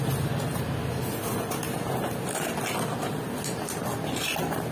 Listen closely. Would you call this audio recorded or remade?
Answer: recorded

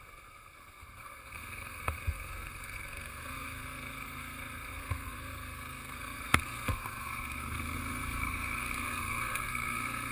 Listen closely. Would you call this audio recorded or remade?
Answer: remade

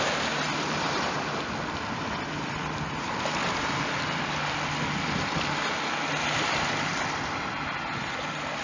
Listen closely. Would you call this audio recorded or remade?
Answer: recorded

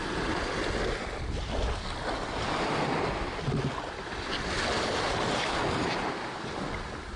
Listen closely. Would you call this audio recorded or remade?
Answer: recorded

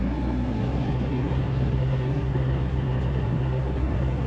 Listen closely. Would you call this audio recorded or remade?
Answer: remade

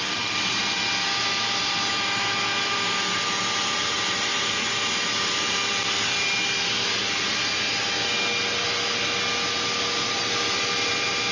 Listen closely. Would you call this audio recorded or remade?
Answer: recorded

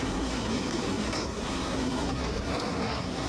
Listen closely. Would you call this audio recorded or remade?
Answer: remade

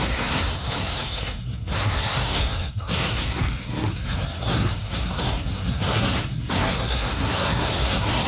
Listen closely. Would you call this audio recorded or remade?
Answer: remade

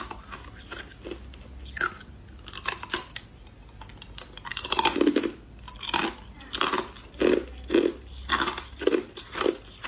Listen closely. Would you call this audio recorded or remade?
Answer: recorded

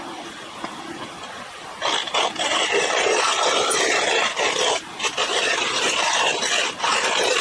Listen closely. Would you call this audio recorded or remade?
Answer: recorded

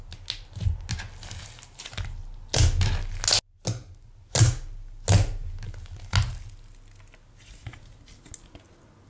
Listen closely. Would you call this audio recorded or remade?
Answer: recorded